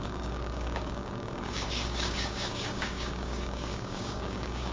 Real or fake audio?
fake